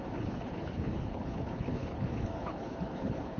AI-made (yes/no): yes